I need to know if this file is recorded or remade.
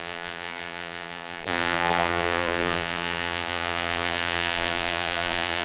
remade